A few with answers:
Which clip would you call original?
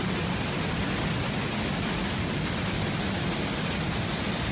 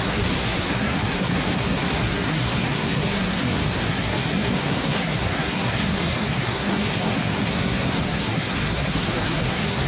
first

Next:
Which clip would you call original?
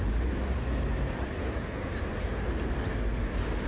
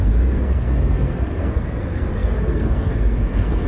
first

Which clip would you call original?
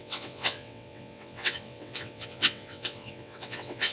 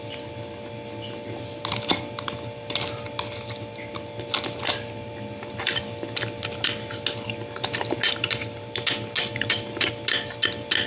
second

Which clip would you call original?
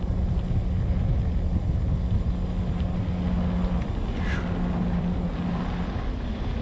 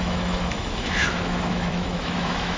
first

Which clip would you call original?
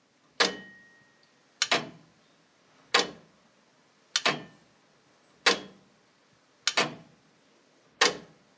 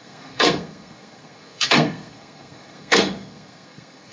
first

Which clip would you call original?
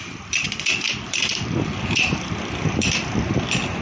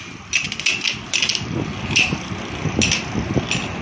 second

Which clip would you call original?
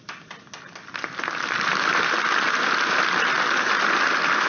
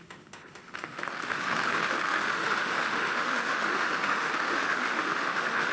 first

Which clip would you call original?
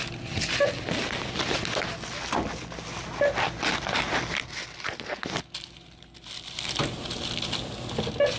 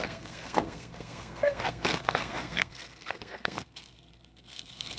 first